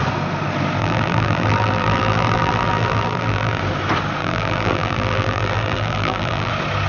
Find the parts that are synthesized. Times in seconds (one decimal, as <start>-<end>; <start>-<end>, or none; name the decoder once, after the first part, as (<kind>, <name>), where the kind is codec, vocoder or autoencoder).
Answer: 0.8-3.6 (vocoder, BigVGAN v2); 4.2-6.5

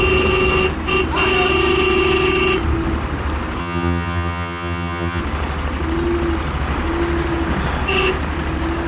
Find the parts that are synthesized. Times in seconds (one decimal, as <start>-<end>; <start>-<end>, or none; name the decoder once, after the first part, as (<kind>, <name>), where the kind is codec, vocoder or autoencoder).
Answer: 3.6-5.2 (vocoder, HiFi-GAN)

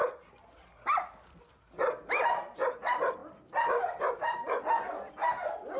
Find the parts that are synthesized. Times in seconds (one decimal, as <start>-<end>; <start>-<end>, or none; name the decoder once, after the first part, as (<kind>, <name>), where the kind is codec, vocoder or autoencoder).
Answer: none